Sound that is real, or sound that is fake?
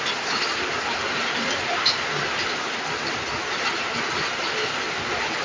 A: real